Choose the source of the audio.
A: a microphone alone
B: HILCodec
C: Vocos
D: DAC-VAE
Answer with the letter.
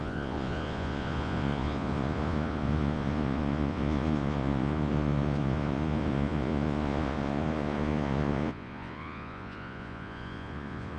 C